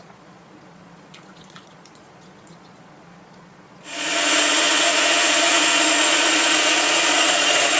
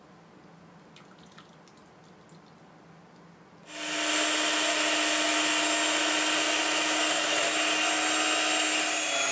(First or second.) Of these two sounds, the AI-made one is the first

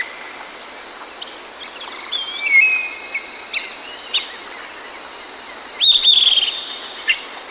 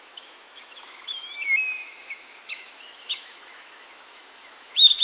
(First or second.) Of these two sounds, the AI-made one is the second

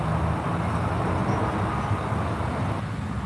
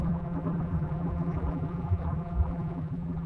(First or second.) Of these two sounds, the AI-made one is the second